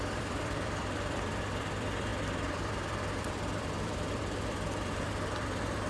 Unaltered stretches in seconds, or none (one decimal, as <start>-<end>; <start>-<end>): none